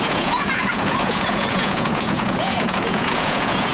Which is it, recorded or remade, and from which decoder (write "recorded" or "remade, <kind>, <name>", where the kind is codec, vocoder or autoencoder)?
remade, vocoder, Vocos